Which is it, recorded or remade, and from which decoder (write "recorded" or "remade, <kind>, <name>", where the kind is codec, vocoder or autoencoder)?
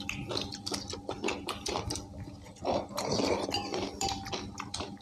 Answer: remade, vocoder, BigVGAN v2